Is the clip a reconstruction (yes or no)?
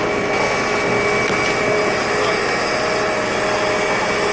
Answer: no